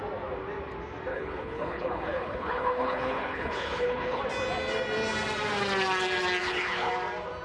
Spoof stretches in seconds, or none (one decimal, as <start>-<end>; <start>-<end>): 1.1-4.2; 6.4-6.9